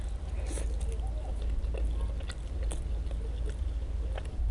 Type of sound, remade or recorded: recorded